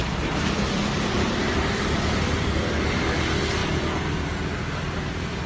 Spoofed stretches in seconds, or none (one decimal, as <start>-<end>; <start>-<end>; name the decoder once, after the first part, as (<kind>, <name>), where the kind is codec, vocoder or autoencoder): 0.0-1.8 (vocoder, BigVGAN v2)